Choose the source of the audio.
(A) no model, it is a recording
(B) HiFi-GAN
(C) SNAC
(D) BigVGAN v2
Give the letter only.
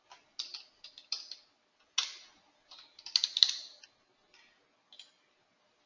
A